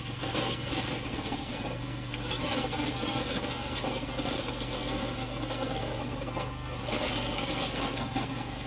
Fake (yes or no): yes